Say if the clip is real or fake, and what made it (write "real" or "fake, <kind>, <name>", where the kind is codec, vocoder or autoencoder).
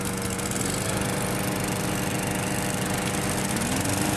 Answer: real